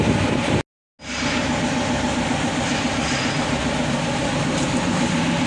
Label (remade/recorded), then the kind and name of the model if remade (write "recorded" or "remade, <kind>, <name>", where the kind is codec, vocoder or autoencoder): recorded